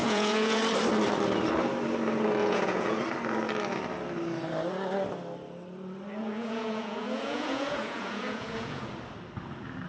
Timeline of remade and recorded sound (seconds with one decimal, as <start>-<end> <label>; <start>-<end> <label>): 0.0-0.6 remade; 0.6-2.4 recorded; 2.4-3.0 remade; 3.0-6.2 recorded; 6.2-8.9 remade; 8.9-9.9 recorded